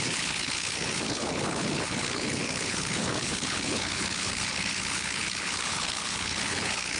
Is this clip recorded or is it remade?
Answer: remade